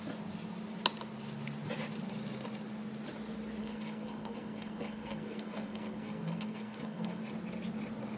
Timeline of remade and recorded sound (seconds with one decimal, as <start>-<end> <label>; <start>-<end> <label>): 0.0-3.6 recorded; 3.6-7.2 remade; 7.2-8.2 recorded